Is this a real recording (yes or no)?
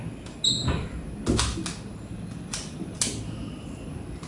yes